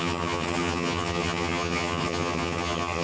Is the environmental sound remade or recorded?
remade